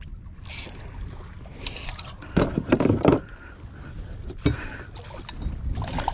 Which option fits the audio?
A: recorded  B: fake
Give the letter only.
A